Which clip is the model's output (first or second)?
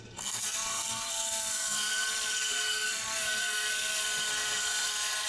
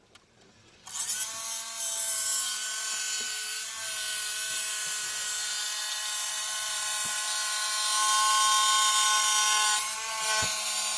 first